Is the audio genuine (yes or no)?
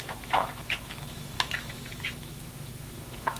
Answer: no